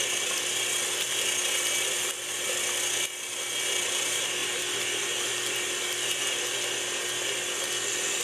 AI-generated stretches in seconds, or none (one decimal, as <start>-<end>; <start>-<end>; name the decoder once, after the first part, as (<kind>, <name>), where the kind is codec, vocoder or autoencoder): none